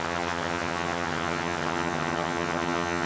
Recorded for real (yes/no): no